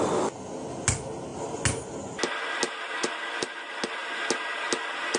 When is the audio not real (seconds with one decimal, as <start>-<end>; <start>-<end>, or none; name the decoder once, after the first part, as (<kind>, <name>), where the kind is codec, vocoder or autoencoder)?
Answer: none